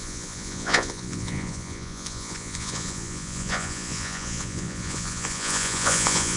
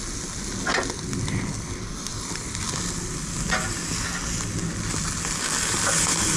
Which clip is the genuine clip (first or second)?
second